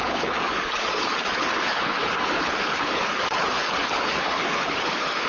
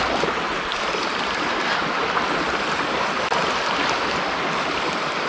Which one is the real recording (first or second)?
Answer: second